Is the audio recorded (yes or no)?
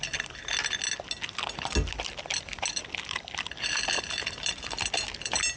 yes